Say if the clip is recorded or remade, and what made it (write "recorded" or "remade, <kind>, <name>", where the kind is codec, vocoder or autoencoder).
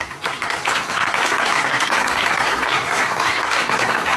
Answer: remade, codec, SNAC